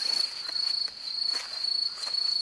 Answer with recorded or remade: recorded